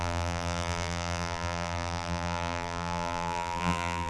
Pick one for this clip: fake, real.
fake